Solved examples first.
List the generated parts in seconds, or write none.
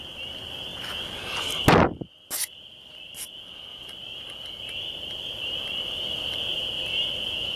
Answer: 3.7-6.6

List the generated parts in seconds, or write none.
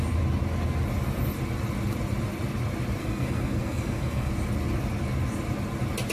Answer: 3.0-4.3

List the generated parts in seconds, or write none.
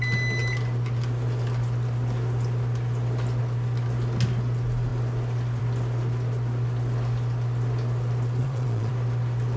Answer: 8.4-8.9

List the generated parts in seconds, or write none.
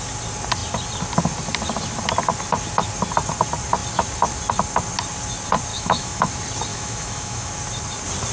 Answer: 5.7-6.3; 6.7-7.5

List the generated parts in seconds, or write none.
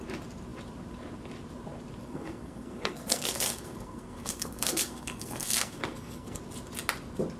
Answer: 2.0-6.4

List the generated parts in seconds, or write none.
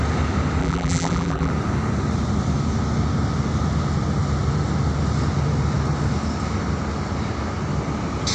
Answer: 0.6-1.5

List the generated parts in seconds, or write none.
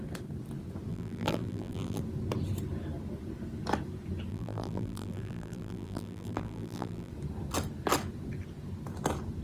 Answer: 0.9-2.0; 4.3-7.1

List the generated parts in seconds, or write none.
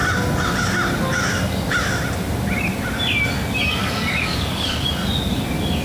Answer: 3.8-4.9